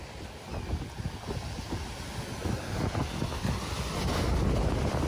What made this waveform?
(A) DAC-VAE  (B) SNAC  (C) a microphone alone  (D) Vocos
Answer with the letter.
C